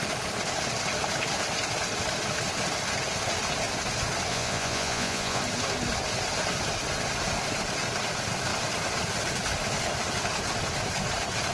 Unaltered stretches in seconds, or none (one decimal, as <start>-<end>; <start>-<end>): 0.0-4.3; 5.4-11.5